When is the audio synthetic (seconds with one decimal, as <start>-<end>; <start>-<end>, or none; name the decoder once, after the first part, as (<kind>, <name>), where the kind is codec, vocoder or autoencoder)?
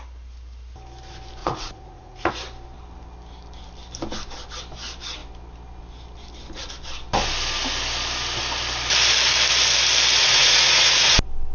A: 1.4-2.3 (vocoder, Vocos); 10.2-11.1